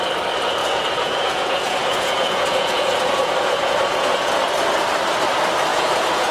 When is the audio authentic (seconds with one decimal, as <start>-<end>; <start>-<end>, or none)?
0.0-0.6; 4.4-5.7

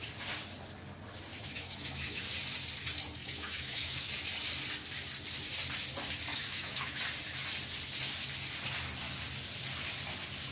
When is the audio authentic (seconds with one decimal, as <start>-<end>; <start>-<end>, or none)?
0.0-1.3; 2.2-3.2; 4.1-6.3; 7.0-10.5

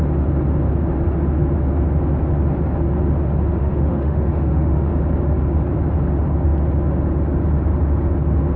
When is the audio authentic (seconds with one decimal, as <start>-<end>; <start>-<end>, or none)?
0.0-3.6; 4.9-8.6

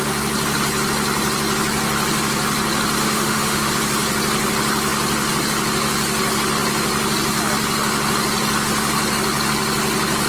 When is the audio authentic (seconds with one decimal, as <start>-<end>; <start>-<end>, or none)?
0.0-3.0; 3.7-10.3

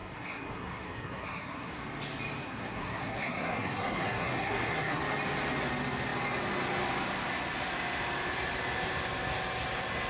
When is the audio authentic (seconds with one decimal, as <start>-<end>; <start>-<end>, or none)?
1.8-2.4; 5.0-10.1

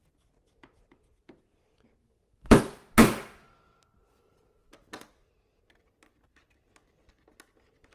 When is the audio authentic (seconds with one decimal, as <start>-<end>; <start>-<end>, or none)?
0.0-2.0; 2.6-7.9